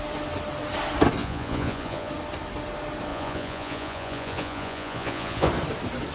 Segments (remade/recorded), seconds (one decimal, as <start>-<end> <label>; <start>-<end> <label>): 0.0-1.2 recorded; 1.2-2.1 remade; 2.1-3.1 recorded; 3.1-5.5 remade; 5.5-6.1 recorded